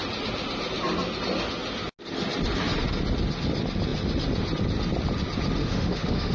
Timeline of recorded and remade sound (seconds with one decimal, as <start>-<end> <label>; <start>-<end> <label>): 0.0-5.6 recorded; 5.6-6.3 remade

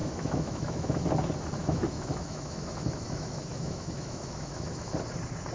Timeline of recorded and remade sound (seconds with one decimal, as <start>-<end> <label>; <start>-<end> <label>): 0.0-1.1 remade; 1.1-1.6 recorded; 1.6-4.9 remade; 4.9-5.5 recorded

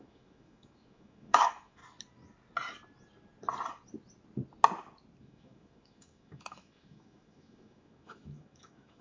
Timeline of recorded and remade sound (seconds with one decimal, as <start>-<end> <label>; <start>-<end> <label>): 0.0-1.8 remade; 1.8-5.2 recorded; 5.2-9.0 remade

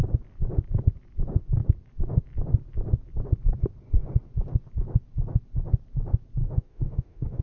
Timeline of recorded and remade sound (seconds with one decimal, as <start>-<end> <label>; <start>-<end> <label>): 0.0-6.4 recorded; 6.4-7.4 remade

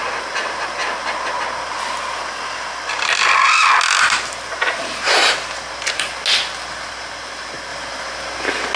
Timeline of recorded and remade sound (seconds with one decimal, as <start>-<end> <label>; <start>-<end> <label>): 0.0-8.8 recorded

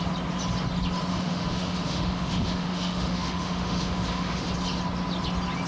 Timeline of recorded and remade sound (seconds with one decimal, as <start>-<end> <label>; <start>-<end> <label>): 0.0-1.1 recorded; 1.1-4.5 remade; 4.5-5.7 recorded

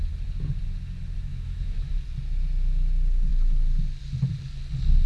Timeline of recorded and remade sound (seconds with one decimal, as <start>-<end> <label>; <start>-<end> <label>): 0.0-1.3 recorded; 1.3-1.9 remade; 1.9-5.1 recorded

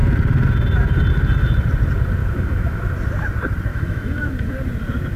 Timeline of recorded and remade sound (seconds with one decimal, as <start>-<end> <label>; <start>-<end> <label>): 0.0-2.2 recorded; 2.2-2.8 remade; 2.8-3.7 recorded; 3.7-4.5 remade; 4.5-5.2 recorded